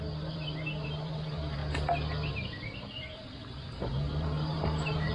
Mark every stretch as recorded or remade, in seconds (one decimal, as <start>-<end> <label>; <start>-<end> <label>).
0.0-1.6 remade; 1.6-2.3 recorded; 2.3-5.1 remade